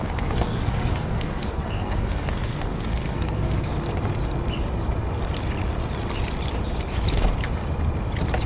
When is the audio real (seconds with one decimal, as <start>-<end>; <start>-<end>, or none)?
3.7-8.5